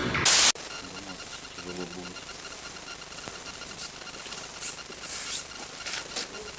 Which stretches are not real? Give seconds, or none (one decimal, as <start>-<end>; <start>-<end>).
none